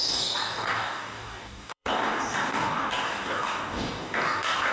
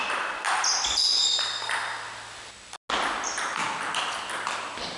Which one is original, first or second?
second